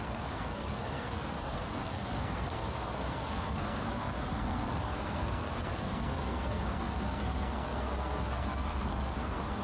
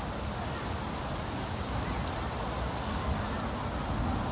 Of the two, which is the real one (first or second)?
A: second